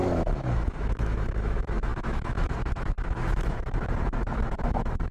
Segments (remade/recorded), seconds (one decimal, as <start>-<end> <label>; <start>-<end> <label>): 0.0-5.1 remade